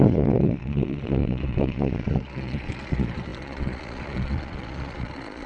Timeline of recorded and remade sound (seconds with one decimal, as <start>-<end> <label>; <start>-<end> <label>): 0.0-5.5 remade